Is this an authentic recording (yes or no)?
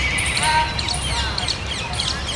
yes